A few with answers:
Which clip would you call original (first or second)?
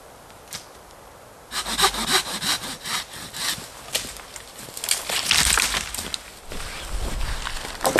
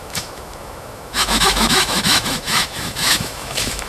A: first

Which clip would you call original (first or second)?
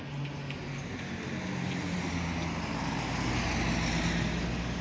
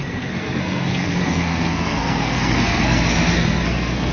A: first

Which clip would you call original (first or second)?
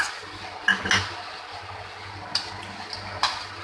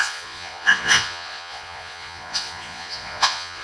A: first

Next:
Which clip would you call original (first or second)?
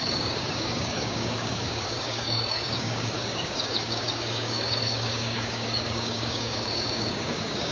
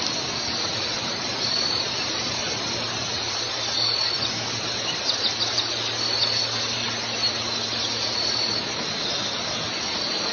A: second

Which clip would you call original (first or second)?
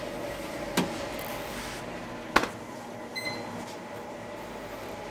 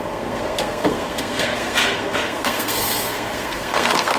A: first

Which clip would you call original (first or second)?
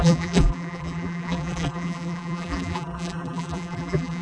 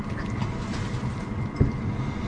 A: second